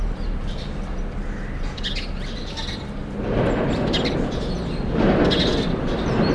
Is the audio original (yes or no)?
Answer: yes